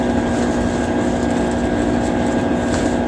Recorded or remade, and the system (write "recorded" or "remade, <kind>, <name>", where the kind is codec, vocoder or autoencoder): recorded